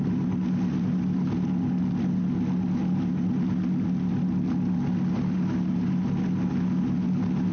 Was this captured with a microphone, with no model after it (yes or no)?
yes